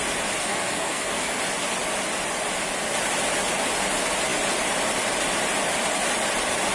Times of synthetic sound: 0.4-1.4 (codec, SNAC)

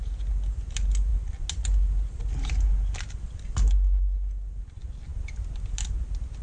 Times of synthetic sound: none

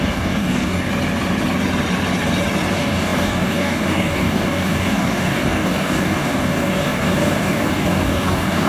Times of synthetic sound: 0.0-0.9 (codec, DAC); 2.7-8.7

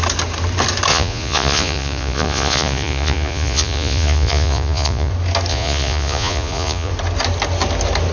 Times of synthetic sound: 0.9-5.1 (vocoder, Vocos); 5.5-6.9